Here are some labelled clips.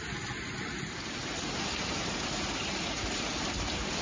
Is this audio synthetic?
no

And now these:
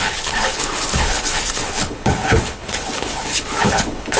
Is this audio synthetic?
yes